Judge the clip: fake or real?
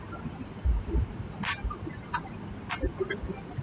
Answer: real